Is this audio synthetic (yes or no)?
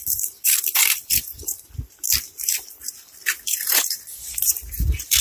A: yes